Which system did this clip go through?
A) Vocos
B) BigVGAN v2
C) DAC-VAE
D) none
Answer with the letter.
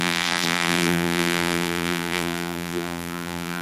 B